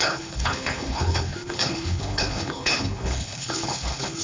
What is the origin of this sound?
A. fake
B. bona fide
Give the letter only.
A